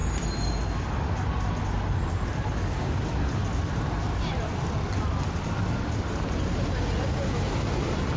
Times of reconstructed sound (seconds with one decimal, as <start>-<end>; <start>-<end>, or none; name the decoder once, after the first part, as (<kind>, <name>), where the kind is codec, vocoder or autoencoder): none